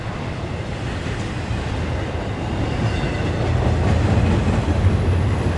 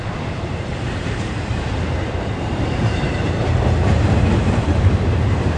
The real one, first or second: first